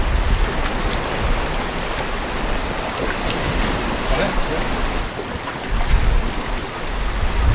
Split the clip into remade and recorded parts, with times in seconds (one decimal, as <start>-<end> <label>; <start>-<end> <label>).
0.0-7.5 recorded